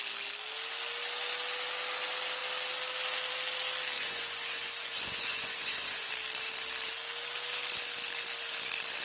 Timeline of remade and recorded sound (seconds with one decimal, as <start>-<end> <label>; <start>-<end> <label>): 0.0-4.0 recorded; 4.0-6.1 remade; 6.1-9.0 recorded